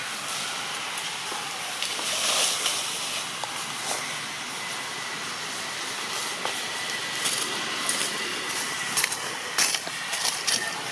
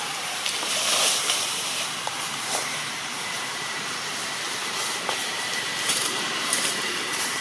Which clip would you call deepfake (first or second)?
second